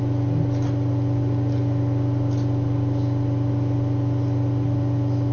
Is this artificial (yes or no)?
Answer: no